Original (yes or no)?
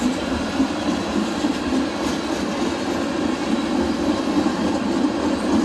yes